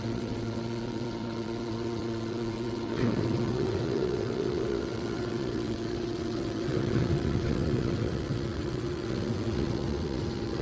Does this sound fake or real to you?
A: fake